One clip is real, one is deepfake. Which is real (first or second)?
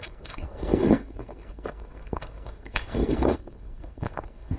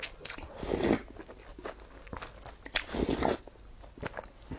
second